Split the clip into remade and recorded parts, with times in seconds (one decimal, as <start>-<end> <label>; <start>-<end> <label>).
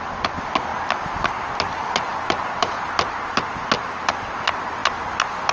0.0-5.5 recorded